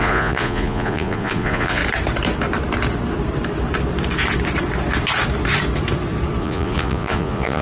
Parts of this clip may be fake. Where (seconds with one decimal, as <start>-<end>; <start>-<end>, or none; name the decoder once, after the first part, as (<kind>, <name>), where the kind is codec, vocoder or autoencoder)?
0.0-1.8 (vocoder, Vocos); 6.4-7.6